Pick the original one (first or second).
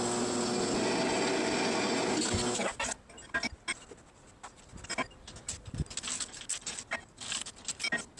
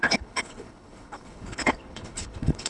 first